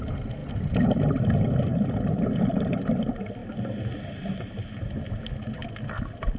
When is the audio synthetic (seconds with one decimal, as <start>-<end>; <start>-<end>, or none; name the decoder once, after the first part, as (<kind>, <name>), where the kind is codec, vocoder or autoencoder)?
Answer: none